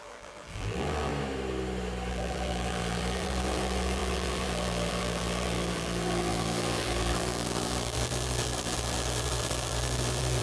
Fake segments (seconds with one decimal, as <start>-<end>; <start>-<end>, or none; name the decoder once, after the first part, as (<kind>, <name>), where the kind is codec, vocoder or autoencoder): 0.0-1.1 (vocoder, BigVGAN v2); 2.1-10.4